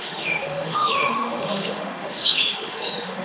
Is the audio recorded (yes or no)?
no